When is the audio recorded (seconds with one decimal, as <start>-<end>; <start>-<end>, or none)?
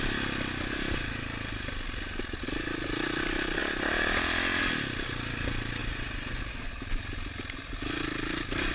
0.0-5.8; 6.4-8.7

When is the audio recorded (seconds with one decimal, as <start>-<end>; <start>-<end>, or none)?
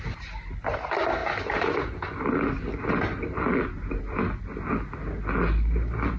0.0-6.2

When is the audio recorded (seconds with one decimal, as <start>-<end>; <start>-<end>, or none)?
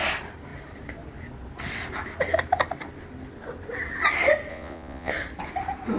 0.0-4.5; 5.1-6.0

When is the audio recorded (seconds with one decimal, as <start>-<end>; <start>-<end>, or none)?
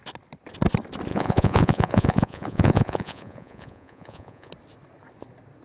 0.0-1.1; 4.5-5.6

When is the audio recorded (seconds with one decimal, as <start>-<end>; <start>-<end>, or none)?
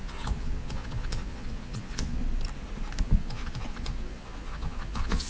2.2-3.0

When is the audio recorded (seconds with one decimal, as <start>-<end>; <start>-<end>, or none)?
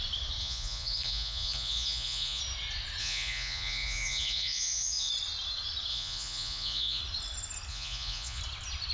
0.0-0.4; 2.4-3.0; 5.1-5.9; 7.0-7.7; 8.4-8.9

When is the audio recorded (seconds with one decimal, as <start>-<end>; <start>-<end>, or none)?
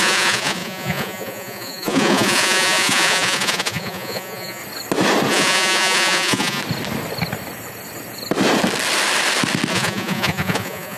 4.6-5.3; 6.6-9.7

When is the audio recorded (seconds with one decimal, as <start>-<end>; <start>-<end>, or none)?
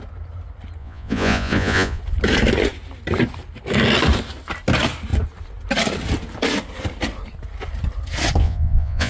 0.0-0.8; 2.0-8.4